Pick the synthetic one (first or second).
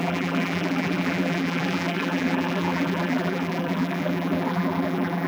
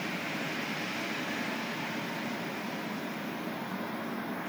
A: first